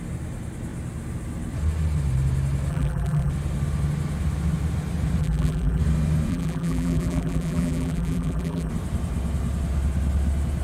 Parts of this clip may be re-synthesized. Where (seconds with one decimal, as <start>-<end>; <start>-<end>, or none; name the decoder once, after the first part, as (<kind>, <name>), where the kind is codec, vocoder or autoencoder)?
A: 2.7-3.3 (vocoder, BigVGAN v2); 5.2-5.8; 6.3-8.7